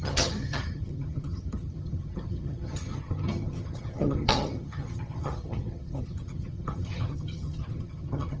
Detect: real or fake fake